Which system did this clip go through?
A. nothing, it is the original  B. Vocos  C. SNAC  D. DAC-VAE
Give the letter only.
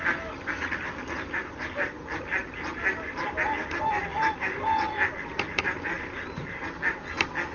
A